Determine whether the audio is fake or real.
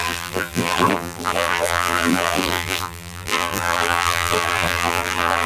fake